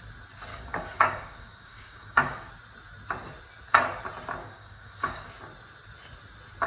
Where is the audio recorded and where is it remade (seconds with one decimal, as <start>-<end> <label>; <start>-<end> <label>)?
0.0-0.5 recorded; 0.5-2.5 remade; 2.5-4.4 recorded; 4.4-5.3 remade; 5.3-6.7 recorded